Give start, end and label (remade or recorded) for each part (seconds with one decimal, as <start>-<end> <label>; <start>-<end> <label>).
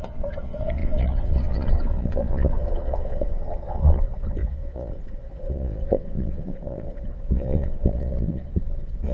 0.0-9.1 remade